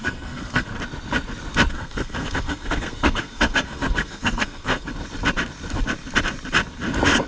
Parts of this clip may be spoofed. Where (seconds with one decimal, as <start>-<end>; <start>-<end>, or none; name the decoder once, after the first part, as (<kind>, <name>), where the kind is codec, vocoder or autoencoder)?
0.0-0.7 (codec, SNAC); 1.7-4.9